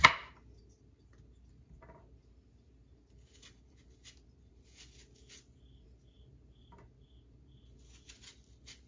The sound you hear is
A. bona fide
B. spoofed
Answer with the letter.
A